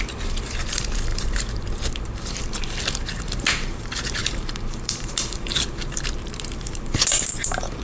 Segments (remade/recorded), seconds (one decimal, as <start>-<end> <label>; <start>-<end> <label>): 0.0-7.8 remade